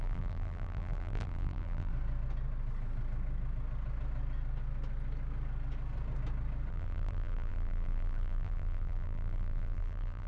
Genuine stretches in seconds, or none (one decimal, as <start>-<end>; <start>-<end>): 1.9-6.7